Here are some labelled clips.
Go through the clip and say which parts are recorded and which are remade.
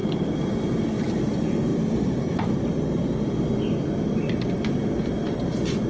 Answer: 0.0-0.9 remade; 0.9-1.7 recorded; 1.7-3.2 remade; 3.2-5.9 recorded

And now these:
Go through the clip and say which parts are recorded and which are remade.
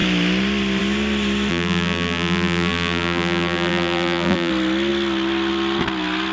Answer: 0.0-1.5 recorded; 1.5-4.5 remade; 4.5-6.3 recorded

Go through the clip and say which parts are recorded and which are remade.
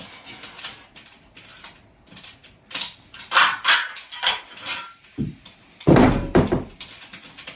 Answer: 0.0-2.4 recorded; 2.4-7.0 remade; 7.0-7.6 recorded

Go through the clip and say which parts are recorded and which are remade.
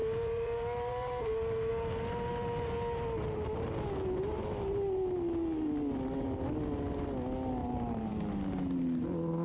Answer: 0.0-1.7 remade; 1.7-7.6 recorded; 7.6-8.1 remade; 8.1-9.4 recorded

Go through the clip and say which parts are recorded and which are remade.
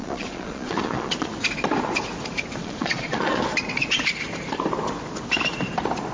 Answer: 0.0-1.3 remade; 1.3-2.6 recorded; 2.6-3.4 remade; 3.4-6.1 recorded